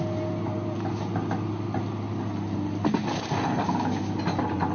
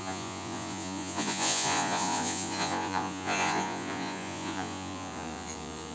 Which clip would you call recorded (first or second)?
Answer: first